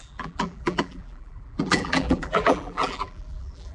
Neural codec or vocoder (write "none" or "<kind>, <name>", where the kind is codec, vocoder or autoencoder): vocoder, BigVGAN v2